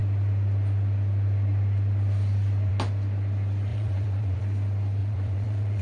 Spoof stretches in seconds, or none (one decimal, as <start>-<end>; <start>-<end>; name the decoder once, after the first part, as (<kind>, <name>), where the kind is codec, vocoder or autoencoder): 3.7-4.4 (vocoder, Vocos); 5.0-5.8